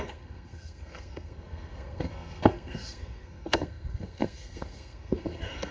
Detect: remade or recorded remade